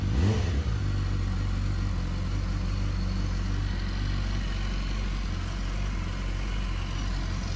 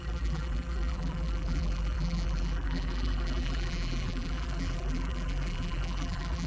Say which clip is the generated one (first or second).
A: second